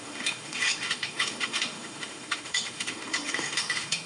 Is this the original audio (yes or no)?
no